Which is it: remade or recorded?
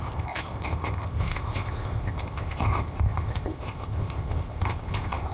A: remade